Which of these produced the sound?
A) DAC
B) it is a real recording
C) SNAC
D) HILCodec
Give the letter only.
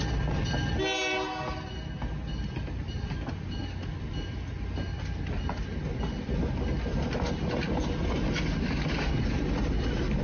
B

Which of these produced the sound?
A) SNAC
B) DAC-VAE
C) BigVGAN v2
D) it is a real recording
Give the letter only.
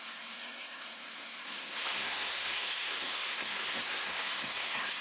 A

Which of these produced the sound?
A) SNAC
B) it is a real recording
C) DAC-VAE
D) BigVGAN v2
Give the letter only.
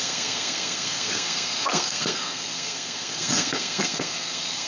A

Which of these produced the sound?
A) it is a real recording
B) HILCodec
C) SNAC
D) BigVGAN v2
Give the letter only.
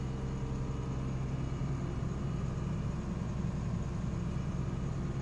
A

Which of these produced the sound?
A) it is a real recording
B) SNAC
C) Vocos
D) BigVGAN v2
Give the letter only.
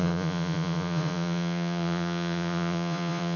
C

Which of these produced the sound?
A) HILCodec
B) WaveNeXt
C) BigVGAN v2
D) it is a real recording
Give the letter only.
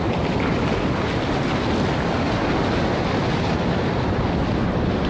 D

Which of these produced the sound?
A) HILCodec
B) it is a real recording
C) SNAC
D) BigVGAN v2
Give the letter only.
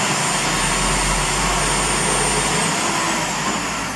B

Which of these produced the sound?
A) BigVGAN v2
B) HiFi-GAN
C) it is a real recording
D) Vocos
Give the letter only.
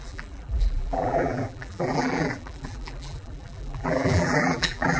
A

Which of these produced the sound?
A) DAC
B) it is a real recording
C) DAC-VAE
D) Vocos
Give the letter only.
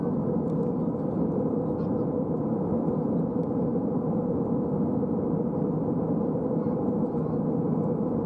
B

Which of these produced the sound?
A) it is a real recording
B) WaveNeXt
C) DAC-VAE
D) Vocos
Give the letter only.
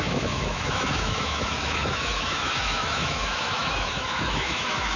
C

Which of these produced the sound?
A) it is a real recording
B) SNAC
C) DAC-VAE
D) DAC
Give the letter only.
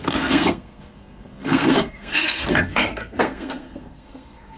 B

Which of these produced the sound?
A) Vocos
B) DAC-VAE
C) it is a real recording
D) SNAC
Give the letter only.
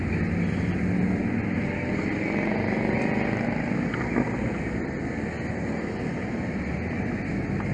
C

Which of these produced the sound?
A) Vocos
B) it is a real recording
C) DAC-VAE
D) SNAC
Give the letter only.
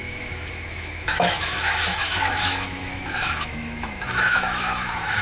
C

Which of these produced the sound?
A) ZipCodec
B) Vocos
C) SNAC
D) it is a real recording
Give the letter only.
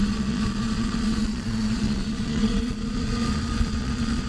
B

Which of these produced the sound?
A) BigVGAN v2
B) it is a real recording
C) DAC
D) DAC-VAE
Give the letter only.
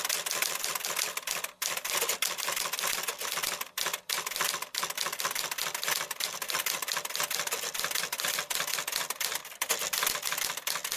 B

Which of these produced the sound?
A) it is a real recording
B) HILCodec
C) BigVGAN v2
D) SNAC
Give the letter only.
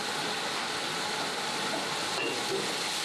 A